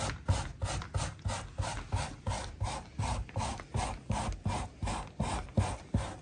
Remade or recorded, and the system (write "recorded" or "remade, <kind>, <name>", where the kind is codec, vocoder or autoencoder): recorded